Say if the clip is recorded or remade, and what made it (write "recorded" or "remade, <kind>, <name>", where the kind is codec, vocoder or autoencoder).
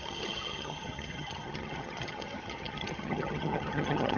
remade, vocoder, HiFi-GAN